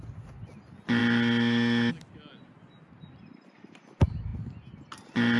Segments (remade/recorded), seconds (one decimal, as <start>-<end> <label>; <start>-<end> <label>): 0.0-5.4 recorded